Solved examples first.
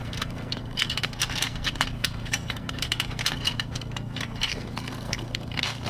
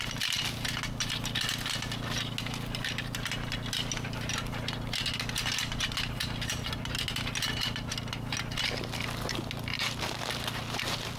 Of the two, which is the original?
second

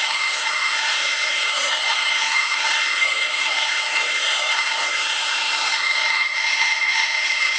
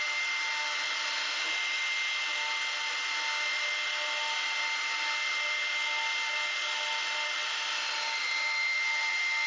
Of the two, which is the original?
second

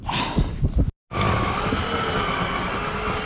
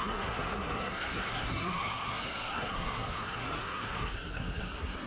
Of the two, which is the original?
first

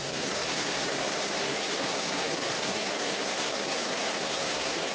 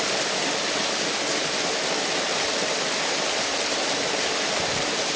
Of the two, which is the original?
second